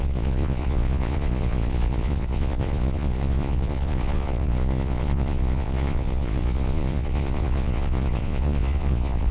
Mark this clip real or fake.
fake